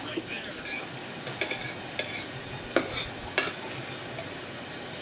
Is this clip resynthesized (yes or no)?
no